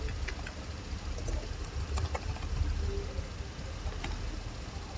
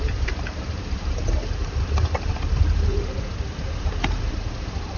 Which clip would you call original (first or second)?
first